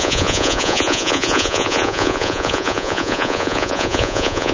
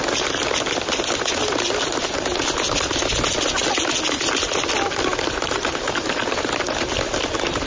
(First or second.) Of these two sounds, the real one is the second